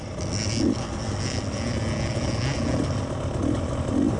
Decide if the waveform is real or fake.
real